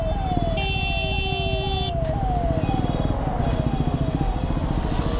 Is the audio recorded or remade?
recorded